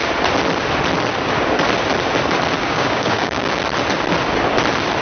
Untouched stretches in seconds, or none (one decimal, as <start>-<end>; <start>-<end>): 0.0-2.6; 3.6-5.0